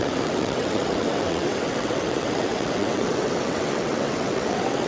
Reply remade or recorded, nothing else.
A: remade